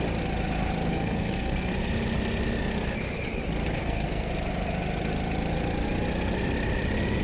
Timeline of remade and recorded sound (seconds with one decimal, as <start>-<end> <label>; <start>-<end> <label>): 0.0-0.9 recorded; 0.9-1.7 remade; 1.7-3.8 recorded; 3.8-4.3 remade; 4.3-7.2 recorded